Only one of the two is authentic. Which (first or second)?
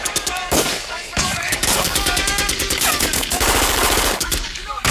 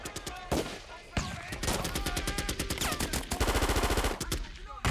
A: second